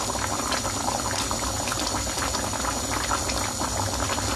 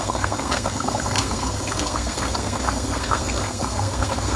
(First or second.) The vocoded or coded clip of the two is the second